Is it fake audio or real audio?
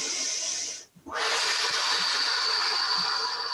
real